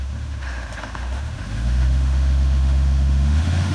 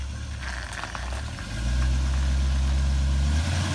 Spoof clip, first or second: first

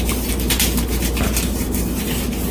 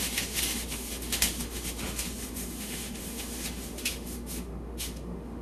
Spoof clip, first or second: second